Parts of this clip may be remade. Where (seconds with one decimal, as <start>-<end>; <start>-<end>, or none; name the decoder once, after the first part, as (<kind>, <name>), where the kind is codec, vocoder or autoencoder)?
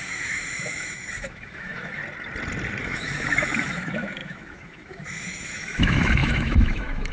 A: 0.0-2.0 (autoencoder, DAC-VAE); 2.8-7.1